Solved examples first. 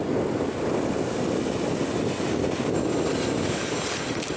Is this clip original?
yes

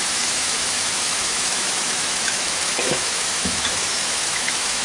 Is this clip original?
no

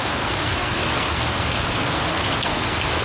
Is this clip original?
no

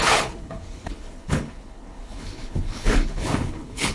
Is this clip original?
no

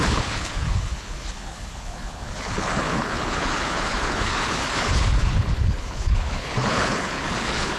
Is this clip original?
no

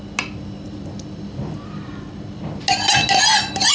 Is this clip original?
yes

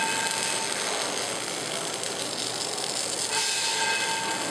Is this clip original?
yes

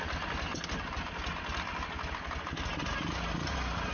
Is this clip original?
yes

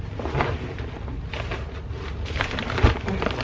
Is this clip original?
yes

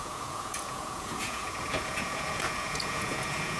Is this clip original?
no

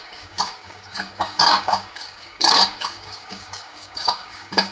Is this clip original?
no